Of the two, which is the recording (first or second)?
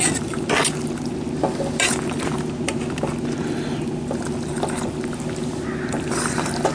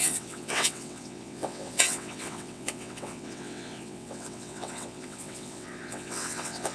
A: first